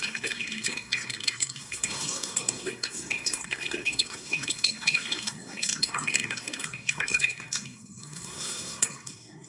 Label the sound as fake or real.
fake